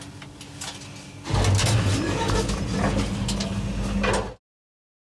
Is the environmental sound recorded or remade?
recorded